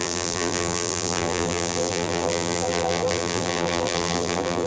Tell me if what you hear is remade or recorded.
remade